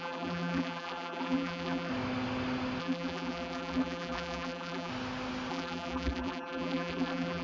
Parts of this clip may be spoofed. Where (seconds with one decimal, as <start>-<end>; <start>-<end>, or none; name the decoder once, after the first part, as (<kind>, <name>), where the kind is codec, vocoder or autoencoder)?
0.0-1.9 (vocoder, BigVGAN v2); 2.8-4.9; 5.5-7.4